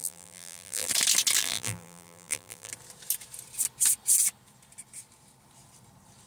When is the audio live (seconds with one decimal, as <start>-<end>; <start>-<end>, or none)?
0.9-1.4; 2.7-6.3